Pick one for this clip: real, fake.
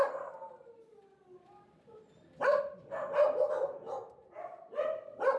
real